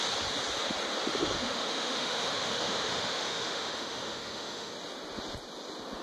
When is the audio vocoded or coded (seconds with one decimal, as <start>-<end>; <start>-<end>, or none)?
1.1-4.7